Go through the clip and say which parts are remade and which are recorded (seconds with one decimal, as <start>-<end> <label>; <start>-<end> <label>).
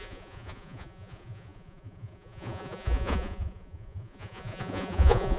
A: 0.0-5.4 remade